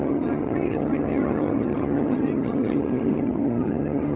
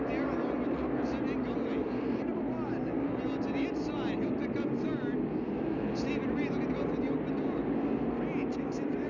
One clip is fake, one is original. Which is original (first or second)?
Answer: second